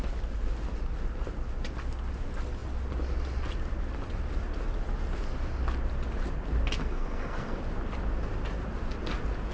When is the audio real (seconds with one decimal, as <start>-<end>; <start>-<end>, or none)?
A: 0.0-6.8; 7.6-9.5